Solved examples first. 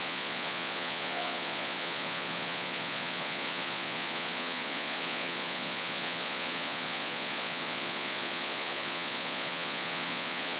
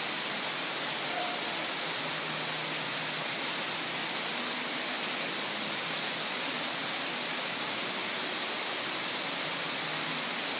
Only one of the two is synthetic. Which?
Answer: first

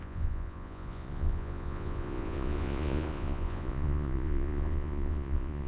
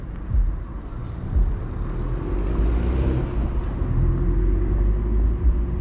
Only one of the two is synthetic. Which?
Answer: first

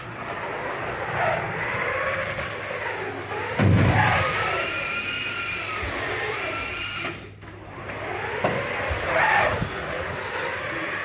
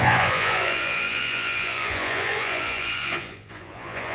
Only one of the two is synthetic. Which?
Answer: second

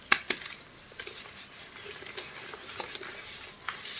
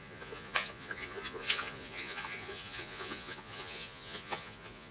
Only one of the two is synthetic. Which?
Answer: second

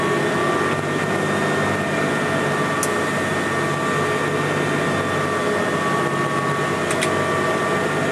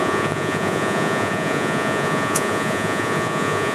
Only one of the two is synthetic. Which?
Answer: second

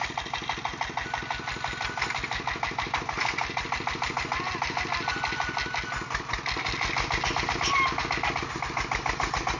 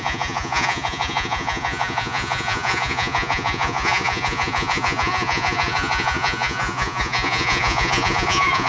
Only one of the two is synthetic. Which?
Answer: second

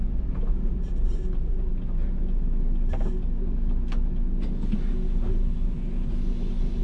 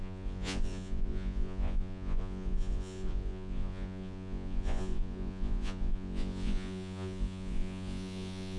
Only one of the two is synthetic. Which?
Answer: second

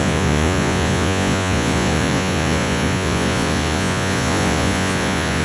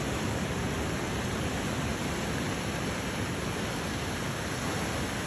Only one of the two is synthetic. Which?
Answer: first